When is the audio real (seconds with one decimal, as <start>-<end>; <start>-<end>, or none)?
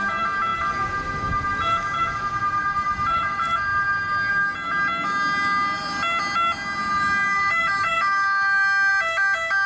0.0-9.7